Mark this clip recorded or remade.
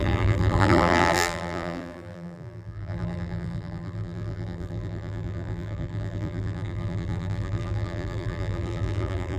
remade